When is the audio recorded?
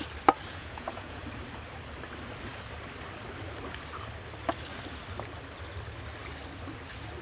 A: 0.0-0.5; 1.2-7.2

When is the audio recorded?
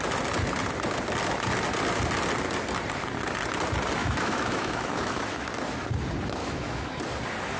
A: 0.0-4.0; 5.5-6.4; 7.0-7.6